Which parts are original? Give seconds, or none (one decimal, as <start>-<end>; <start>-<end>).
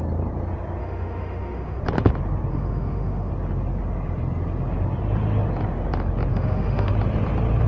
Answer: 0.0-0.8; 1.8-2.5; 3.3-6.3; 6.9-7.7